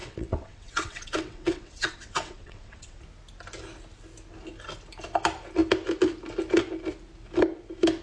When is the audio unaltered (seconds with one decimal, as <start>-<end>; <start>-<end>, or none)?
3.0-8.0